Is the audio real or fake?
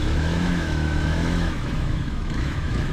fake